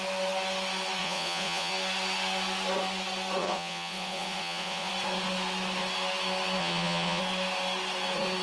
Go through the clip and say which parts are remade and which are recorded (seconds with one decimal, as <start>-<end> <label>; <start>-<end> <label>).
0.0-1.0 recorded; 1.0-1.7 remade; 1.7-3.4 recorded; 3.4-4.9 remade; 4.9-6.6 recorded; 6.6-7.2 remade; 7.2-8.4 recorded